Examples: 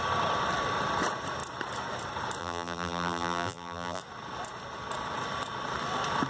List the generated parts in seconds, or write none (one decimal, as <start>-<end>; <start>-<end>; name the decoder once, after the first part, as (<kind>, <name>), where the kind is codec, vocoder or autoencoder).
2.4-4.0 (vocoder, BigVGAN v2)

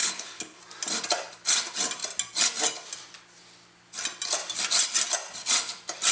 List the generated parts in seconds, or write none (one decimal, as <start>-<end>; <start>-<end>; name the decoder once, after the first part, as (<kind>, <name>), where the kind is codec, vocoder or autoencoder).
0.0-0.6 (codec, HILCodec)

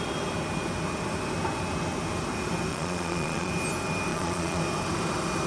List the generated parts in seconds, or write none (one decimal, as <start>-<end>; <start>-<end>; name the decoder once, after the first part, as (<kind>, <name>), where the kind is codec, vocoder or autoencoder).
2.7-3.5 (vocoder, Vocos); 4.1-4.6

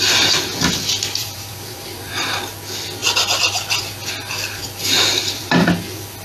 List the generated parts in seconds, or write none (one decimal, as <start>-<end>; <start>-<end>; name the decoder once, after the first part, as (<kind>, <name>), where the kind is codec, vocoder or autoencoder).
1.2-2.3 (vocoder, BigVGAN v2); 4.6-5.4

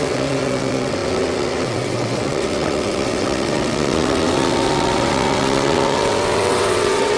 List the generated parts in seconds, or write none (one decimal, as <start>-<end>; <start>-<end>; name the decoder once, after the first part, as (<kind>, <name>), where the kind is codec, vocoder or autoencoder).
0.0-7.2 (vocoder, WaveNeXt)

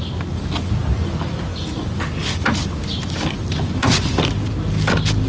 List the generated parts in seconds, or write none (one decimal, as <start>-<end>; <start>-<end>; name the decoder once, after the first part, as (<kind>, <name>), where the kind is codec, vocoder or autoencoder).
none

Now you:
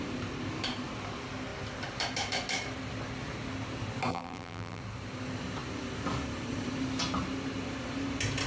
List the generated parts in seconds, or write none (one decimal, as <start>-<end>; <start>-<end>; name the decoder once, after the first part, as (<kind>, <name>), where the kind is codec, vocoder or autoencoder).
4.1-4.8 (vocoder, BigVGAN v2)

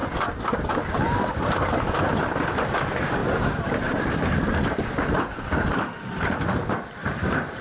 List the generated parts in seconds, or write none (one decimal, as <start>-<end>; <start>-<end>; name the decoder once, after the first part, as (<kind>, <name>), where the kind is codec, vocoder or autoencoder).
7.0-7.6 (vocoder, BigVGAN v2)